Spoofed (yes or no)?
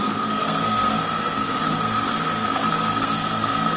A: yes